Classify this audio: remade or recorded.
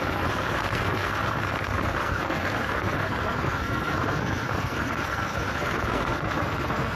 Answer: remade